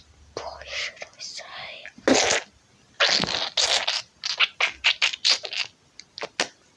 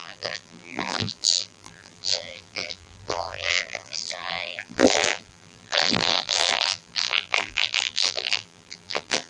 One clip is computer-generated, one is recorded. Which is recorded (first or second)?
first